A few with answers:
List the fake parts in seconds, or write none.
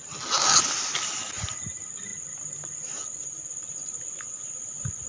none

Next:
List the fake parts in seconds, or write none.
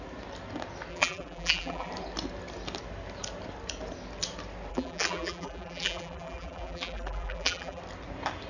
0.9-1.9 (vocoder, BigVGAN v2); 4.7-7.8